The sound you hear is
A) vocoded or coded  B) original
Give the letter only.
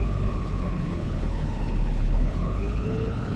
A